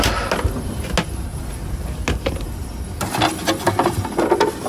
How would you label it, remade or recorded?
recorded